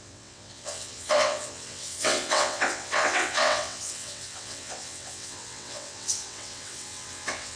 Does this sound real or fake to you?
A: fake